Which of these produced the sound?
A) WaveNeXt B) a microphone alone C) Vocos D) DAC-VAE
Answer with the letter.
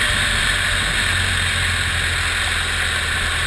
B